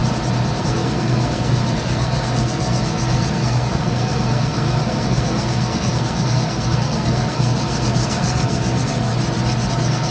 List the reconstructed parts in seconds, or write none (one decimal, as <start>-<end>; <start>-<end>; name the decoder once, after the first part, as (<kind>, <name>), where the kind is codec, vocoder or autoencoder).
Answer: 0.6-9.1 (codec, SNAC); 9.7-10.1